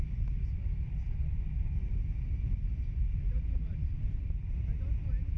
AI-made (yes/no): no